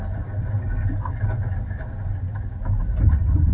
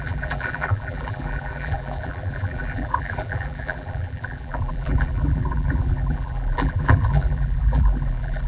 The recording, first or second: first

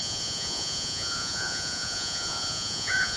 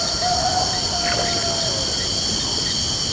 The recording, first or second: second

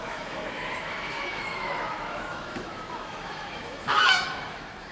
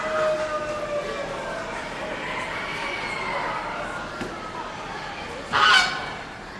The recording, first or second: second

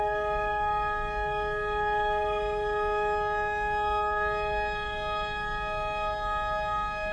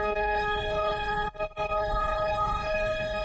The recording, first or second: first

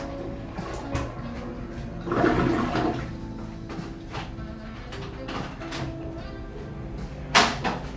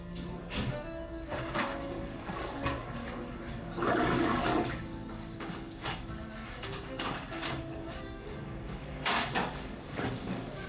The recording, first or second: first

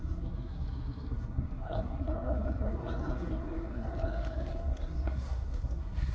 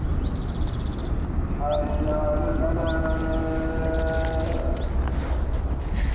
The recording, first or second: second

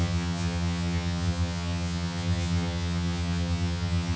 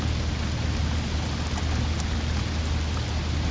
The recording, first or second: second